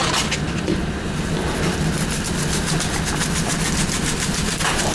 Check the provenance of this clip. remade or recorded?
recorded